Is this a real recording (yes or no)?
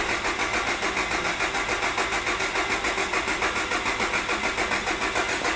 yes